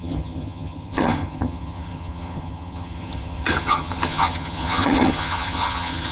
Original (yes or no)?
no